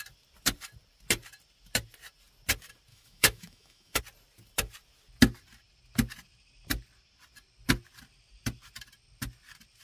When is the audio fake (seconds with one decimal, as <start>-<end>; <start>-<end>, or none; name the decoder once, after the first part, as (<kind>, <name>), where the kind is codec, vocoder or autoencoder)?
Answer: 2.9-4.0 (autoencoder, DAC-VAE)